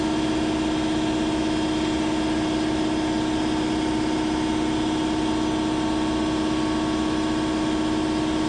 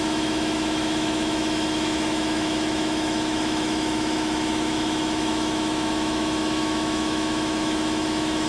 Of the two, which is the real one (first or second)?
first